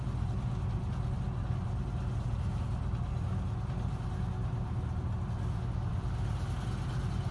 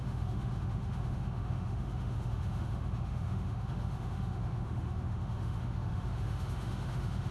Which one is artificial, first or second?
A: second